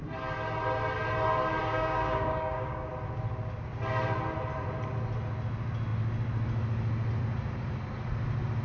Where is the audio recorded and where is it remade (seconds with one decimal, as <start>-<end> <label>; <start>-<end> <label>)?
0.0-1.6 recorded; 1.6-2.9 remade; 2.9-8.6 recorded